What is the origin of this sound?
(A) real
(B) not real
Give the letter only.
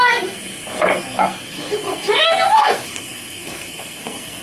B